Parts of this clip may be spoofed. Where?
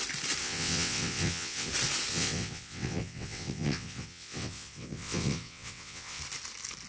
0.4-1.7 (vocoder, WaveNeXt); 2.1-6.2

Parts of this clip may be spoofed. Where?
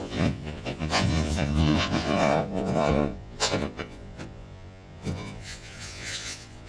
0.0-6.7 (vocoder, Vocos)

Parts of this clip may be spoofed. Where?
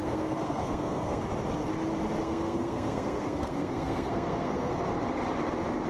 0.0-1.2 (codec, SNAC); 2.2-4.7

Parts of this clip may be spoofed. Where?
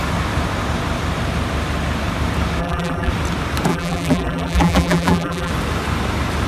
2.6-3.1 (vocoder, BigVGAN v2); 3.7-5.5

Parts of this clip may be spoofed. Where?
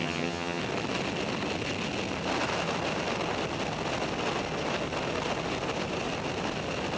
0.0-0.6 (vocoder, HiFi-GAN)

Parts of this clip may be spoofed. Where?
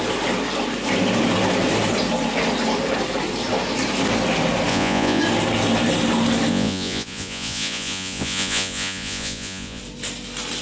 4.7-5.2 (vocoder, Vocos); 6.5-9.8